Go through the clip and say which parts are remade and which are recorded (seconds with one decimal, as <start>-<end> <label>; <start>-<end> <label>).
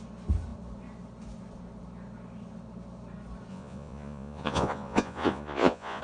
0.0-3.5 recorded; 3.5-6.0 remade